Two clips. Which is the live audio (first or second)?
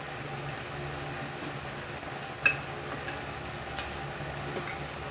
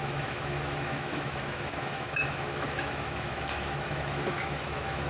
first